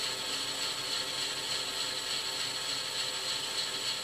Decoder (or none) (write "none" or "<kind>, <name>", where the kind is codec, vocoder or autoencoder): none